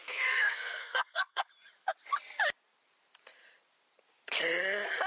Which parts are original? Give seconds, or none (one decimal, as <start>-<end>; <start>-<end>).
1.5-5.1